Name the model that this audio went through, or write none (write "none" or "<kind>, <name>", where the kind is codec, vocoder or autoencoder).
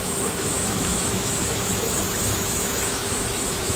autoencoder, DAC-VAE